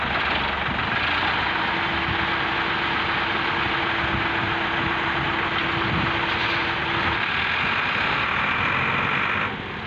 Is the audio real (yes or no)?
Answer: yes